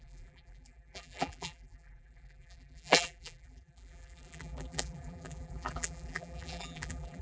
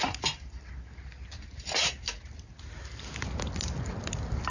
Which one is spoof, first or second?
first